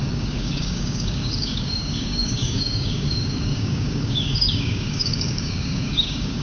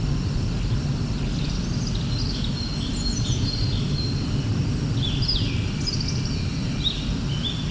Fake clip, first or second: first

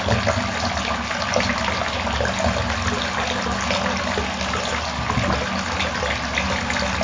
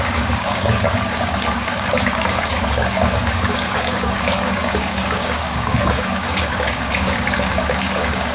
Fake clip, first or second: second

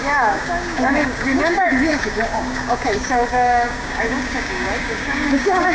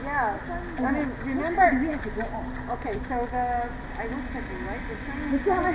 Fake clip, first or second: first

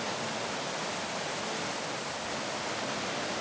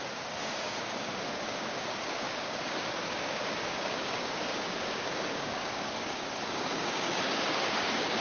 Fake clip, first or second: second